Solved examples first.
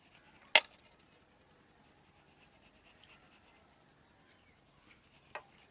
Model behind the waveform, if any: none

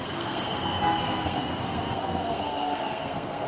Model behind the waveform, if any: codec, SNAC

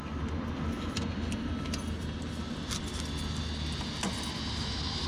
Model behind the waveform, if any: none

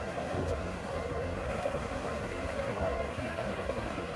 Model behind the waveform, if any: codec, SNAC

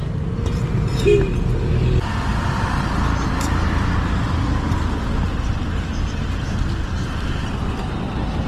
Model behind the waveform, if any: none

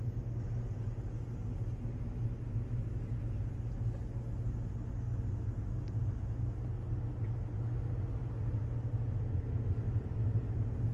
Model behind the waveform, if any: none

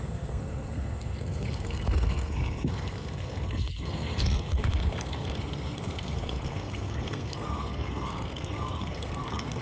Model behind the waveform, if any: codec, SNAC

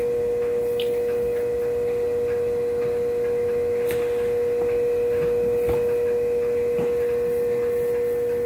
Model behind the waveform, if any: none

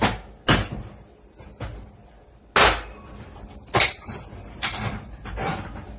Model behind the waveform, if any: none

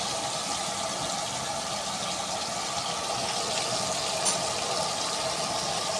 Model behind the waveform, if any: none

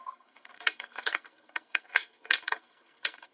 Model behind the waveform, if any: codec, SNAC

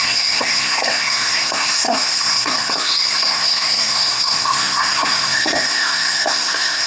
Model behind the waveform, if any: codec, SNAC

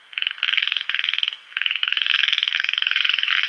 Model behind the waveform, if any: codec, SNAC